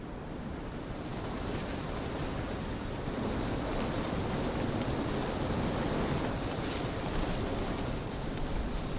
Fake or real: fake